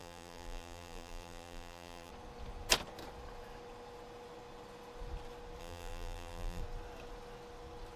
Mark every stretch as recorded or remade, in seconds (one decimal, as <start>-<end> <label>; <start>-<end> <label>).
0.0-2.1 remade; 2.1-5.6 recorded; 5.6-6.6 remade; 6.6-8.0 recorded